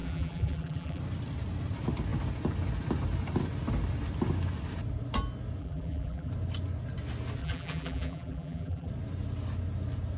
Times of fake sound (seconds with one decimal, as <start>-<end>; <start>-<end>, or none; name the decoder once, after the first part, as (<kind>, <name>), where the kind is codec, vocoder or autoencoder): 0.0-1.0 (vocoder, BigVGAN v2); 5.6-6.3; 7.4-8.9